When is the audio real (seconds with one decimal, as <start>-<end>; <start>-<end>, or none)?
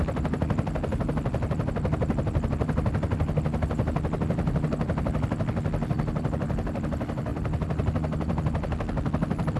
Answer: 0.0-9.6